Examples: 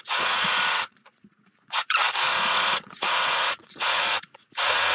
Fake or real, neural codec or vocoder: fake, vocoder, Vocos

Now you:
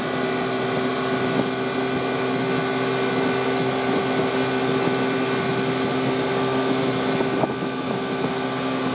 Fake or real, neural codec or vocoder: real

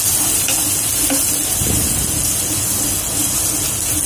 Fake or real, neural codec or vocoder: real